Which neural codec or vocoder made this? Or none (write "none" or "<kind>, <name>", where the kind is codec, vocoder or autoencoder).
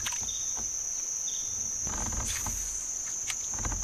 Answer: none